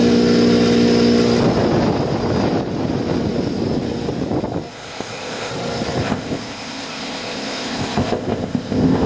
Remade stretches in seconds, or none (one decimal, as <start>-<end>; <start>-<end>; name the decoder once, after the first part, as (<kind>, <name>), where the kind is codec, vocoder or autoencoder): 4.7-5.5 (codec, ZipCodec); 6.0-9.1